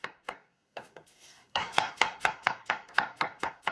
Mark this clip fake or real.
fake